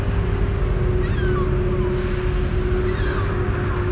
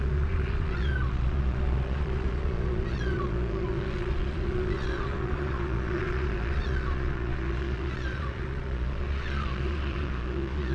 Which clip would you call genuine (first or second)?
first